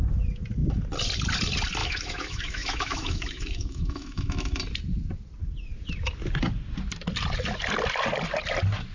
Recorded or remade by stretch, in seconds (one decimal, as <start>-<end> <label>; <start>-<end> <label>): 0.0-1.8 recorded; 1.8-4.6 remade; 4.6-8.9 recorded

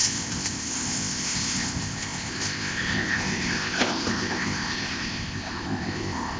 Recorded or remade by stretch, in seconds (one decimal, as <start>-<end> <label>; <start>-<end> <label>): 0.0-6.4 remade

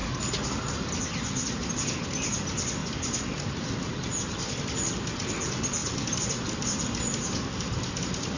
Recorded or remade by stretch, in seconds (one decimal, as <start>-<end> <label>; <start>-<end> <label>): 0.0-8.4 recorded

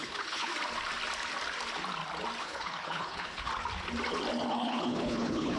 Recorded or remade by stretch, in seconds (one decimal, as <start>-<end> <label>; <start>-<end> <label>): 0.0-0.5 remade; 0.5-2.4 recorded; 2.4-3.5 remade; 3.5-4.5 recorded; 4.5-5.6 remade

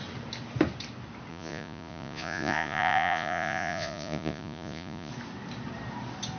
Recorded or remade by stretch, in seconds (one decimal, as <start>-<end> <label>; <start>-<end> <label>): 0.0-1.3 recorded; 1.3-5.1 remade; 5.1-6.4 recorded

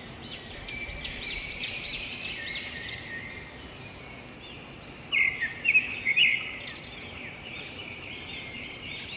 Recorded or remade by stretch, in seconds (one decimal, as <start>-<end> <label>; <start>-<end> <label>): 0.0-1.9 remade; 1.9-5.4 recorded; 5.4-6.2 remade; 6.2-7.0 recorded; 7.0-9.2 remade